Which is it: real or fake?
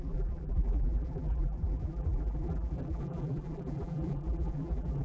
fake